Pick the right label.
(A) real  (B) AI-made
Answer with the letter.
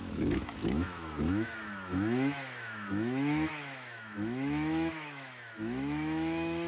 B